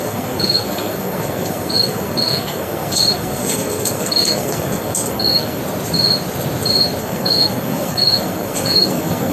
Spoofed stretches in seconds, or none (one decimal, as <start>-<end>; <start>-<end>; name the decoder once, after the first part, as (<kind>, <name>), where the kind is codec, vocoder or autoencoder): 0.0-5.6 (codec, SNAC); 7.0-9.3